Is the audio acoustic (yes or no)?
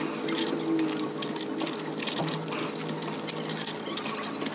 yes